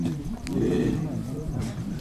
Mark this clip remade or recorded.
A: remade